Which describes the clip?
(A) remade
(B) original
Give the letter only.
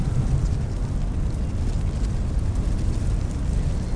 B